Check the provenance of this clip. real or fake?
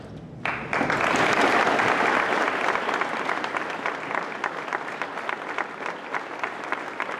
real